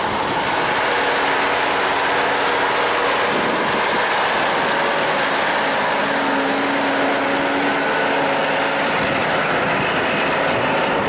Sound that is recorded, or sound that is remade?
recorded